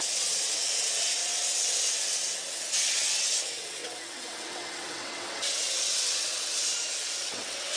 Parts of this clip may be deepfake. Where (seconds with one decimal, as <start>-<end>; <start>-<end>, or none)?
0.0-6.6; 7.2-7.8